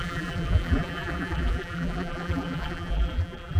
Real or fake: fake